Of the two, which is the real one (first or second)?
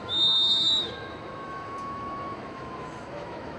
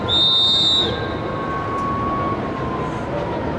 second